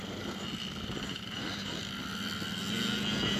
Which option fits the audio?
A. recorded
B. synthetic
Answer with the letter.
A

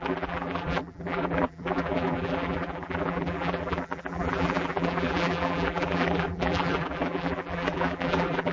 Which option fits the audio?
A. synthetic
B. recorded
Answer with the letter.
A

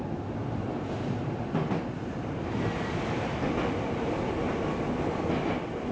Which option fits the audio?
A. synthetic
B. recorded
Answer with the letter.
B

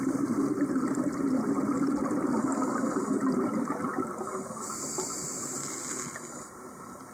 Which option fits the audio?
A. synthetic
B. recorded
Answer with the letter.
B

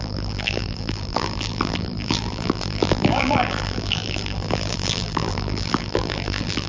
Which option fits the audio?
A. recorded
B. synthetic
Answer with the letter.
B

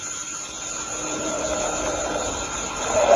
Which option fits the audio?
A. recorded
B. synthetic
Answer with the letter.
A